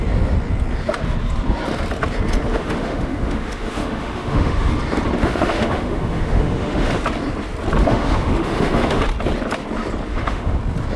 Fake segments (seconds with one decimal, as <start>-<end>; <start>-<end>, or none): 2.5-4.7; 5.2-6.9; 7.8-9.0; 10.1-10.6